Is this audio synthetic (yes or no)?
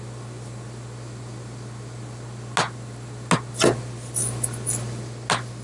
no